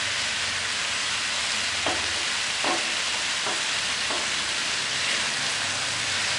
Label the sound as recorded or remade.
recorded